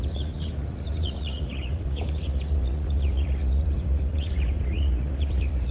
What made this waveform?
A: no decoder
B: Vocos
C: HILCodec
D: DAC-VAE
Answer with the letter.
B